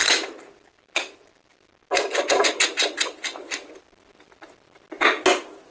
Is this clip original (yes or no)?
yes